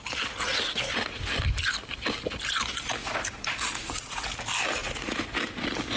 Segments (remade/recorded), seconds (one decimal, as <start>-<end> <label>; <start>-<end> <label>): 0.0-3.7 recorded; 3.7-4.3 remade; 4.3-4.8 recorded; 4.8-5.3 remade; 5.3-6.0 recorded